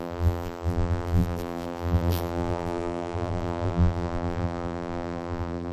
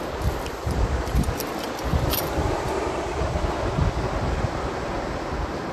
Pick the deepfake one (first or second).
first